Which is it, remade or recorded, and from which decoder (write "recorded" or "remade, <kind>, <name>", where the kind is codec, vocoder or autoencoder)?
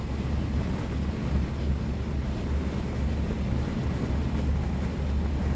recorded